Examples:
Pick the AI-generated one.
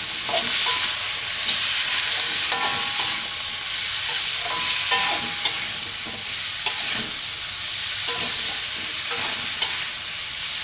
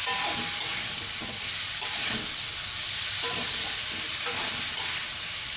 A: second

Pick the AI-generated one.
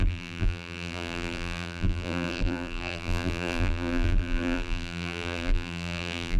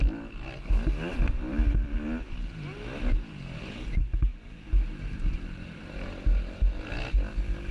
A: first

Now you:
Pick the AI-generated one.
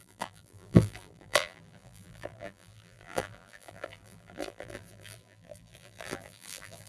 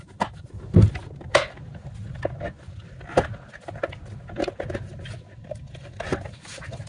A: first